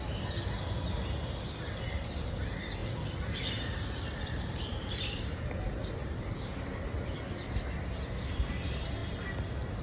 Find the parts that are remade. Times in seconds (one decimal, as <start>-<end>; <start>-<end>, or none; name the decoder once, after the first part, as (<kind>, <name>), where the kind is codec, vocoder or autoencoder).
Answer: 2.8-7.1 (vocoder, BigVGAN v2)